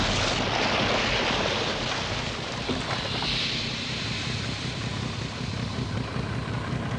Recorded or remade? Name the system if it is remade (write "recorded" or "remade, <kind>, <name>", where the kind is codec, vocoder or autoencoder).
recorded